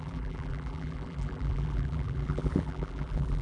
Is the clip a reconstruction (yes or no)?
yes